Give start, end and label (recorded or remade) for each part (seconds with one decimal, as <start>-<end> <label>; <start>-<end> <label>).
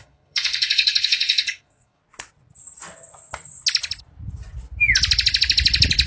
0.0-2.0 remade; 2.0-6.1 recorded